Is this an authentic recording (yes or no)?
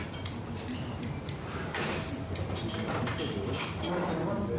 yes